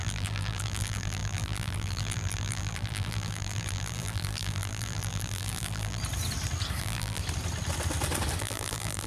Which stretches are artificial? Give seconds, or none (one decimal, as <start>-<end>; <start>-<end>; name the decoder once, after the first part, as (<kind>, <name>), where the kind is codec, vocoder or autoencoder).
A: 0.0-6.0 (vocoder, BigVGAN v2); 6.8-7.2; 8.4-9.1